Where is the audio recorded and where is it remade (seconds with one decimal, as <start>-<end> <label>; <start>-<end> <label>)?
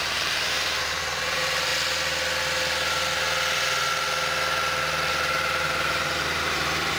0.0-1.7 remade; 1.7-5.1 recorded; 5.1-7.0 remade